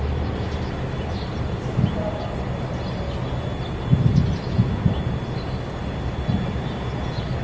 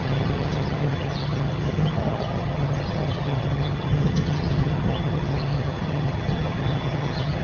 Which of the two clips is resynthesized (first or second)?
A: second